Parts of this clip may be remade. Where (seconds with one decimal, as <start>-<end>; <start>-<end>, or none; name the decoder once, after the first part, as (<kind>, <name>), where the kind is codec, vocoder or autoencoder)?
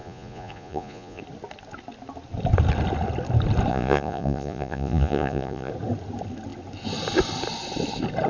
0.0-1.2 (vocoder, Vocos); 3.7-5.7